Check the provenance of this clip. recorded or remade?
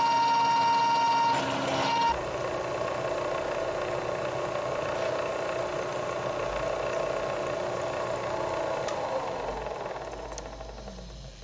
recorded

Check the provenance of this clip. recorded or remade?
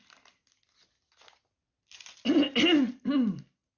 recorded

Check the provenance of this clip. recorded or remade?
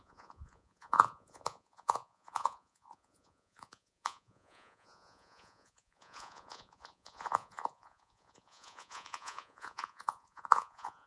remade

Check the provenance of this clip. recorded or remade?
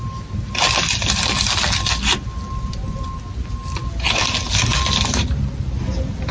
recorded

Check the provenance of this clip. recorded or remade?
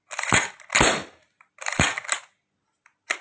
recorded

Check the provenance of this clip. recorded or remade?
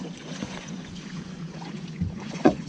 remade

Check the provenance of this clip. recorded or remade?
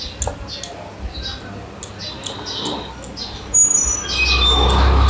recorded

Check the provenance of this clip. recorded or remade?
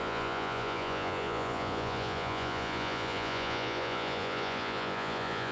remade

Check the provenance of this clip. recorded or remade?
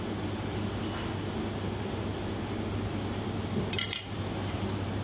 recorded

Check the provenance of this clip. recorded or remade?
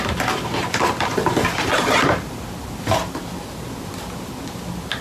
recorded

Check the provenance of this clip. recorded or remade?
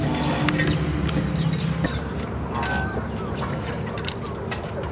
recorded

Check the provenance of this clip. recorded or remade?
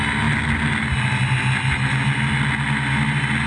recorded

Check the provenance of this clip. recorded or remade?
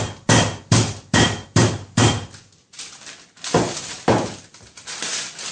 remade